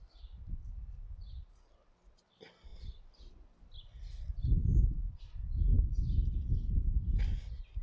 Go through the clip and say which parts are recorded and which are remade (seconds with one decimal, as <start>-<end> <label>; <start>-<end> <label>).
0.0-2.7 recorded; 2.7-4.6 remade; 4.6-5.7 recorded; 5.7-7.2 remade; 7.2-7.8 recorded